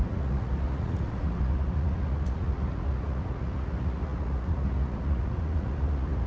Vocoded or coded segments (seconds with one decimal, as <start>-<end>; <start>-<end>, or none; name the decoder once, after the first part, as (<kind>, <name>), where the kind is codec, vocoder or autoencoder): 0.0-6.3 (vocoder, Vocos)